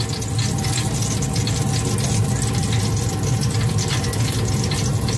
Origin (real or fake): real